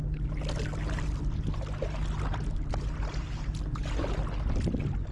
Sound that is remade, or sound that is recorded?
recorded